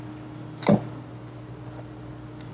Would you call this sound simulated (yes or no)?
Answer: no